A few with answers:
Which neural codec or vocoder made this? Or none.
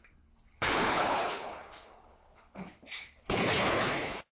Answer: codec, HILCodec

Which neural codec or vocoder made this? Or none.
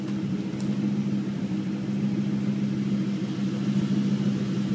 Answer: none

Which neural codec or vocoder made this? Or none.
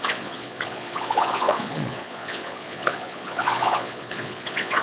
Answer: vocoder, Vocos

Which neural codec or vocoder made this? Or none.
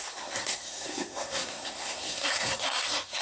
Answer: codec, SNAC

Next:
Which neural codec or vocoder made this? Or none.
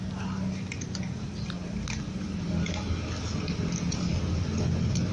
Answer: none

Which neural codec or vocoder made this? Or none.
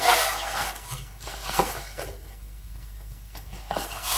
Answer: codec, SNAC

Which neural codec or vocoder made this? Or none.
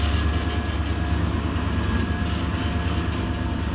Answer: none